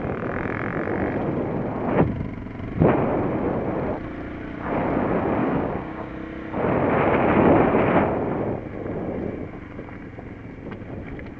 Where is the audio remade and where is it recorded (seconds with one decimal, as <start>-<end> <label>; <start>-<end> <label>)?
0.0-5.4 recorded; 5.4-6.1 remade; 6.1-11.4 recorded